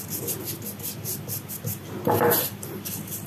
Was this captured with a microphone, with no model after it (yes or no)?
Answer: yes